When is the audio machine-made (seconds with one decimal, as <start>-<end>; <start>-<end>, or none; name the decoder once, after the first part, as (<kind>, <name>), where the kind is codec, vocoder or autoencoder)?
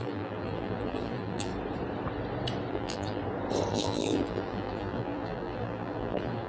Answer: 0.0-1.5 (vocoder, BigVGAN v2); 2.7-3.2; 3.7-6.5